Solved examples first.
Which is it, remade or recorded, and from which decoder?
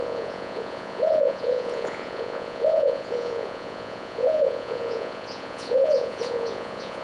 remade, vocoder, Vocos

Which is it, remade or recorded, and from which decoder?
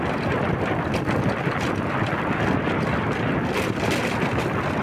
recorded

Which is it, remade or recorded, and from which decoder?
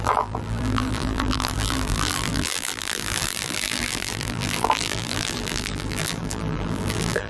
remade, vocoder, BigVGAN v2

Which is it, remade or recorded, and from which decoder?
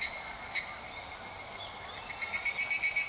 recorded